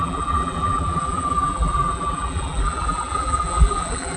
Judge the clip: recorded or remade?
remade